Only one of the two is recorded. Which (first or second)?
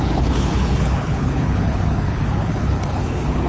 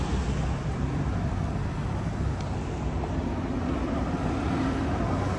second